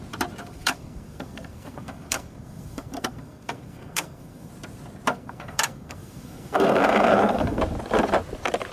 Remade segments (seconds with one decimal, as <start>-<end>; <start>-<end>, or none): 0.4-4.5; 5.1-7.6